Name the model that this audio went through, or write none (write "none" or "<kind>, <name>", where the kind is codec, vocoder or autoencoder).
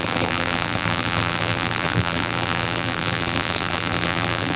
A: vocoder, BigVGAN v2